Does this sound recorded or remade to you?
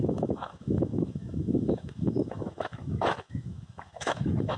remade